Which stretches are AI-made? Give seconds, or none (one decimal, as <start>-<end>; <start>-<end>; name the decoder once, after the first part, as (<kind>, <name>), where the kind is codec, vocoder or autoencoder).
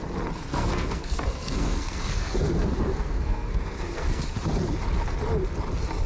0.5-4.2 (codec, SNAC)